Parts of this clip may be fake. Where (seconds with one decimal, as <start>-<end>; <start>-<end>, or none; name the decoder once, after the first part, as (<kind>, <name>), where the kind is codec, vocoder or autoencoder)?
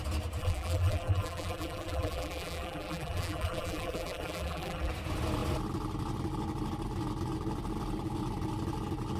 0.4-4.9 (vocoder, BigVGAN v2)